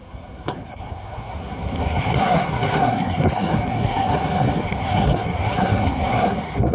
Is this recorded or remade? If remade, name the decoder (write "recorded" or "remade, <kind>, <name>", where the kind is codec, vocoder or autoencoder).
remade, codec, SNAC